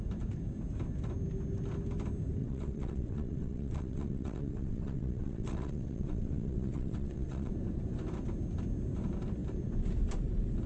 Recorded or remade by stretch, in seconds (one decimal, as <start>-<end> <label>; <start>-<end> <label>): 0.0-2.4 recorded; 2.4-7.5 remade; 7.5-10.7 recorded